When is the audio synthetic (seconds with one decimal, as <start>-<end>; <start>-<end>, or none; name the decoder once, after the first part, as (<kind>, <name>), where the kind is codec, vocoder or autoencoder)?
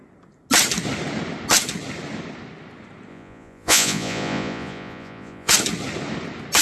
3.1-5.5 (vocoder, Vocos)